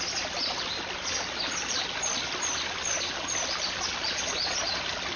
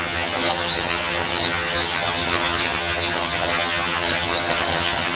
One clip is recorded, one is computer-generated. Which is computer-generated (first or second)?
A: second